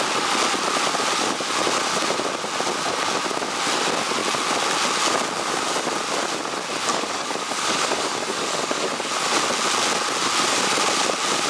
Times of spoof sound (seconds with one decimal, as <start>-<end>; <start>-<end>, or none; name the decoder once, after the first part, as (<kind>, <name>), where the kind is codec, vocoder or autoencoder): 6.9-9.1 (codec, DAC)